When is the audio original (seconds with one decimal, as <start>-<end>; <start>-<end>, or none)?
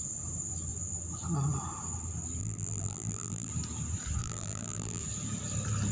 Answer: 0.0-2.4; 3.5-4.2; 5.0-5.9